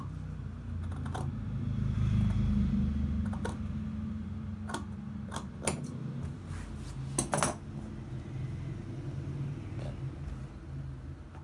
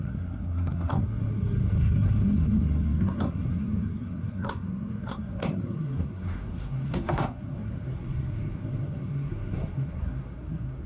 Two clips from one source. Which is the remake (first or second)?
second